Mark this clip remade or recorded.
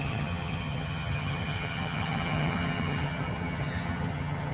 remade